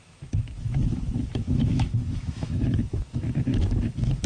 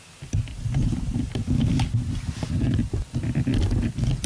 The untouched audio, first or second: second